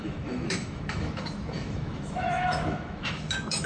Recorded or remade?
remade